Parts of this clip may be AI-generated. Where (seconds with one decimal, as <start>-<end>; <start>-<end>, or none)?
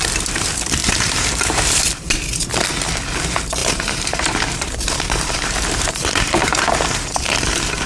0.8-2.5; 3.6-6.7